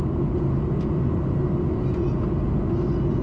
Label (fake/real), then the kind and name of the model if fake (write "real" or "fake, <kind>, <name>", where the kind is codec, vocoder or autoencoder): real